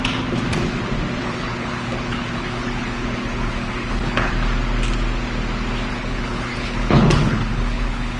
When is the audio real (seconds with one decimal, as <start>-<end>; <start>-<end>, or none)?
0.0-1.2; 4.3-5.9

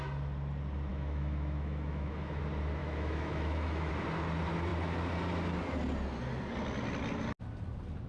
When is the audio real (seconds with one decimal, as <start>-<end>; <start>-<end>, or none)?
0.0-0.9; 2.4-2.8; 3.9-8.1

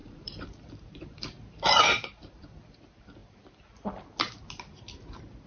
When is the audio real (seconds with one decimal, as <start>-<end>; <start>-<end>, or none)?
2.4-5.5

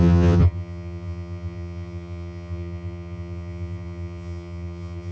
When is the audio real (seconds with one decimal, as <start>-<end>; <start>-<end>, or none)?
none